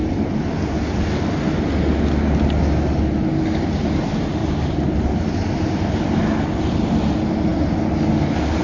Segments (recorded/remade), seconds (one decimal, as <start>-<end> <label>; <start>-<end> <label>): 0.0-4.4 recorded; 4.4-5.2 remade; 5.2-8.6 recorded